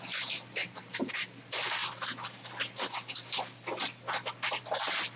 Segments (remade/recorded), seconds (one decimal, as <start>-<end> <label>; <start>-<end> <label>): 0.0-0.6 recorded; 0.6-1.1 remade; 1.1-5.2 recorded